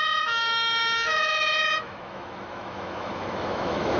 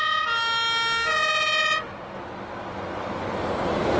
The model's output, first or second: first